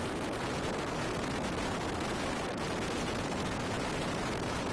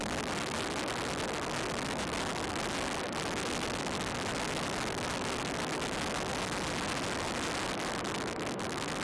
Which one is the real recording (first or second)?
second